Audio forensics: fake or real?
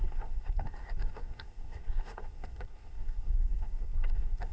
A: fake